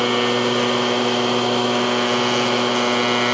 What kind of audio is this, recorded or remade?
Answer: recorded